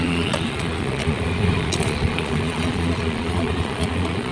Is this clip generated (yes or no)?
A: yes